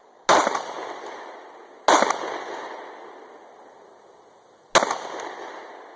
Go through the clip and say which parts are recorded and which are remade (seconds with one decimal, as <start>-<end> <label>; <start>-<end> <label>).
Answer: 0.0-6.0 recorded